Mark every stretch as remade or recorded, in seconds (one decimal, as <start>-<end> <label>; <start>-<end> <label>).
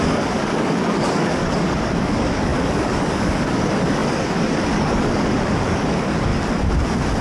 0.0-6.3 remade; 6.3-7.2 recorded